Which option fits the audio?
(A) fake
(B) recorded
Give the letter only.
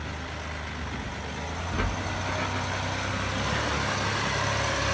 B